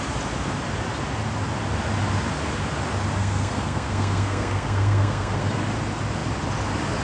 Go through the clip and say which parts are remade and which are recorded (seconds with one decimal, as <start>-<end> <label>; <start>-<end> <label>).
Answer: 0.0-3.2 recorded; 3.2-5.5 remade; 5.5-7.0 recorded